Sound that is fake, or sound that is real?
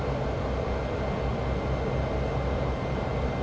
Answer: real